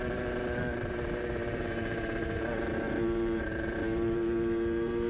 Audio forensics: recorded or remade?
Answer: remade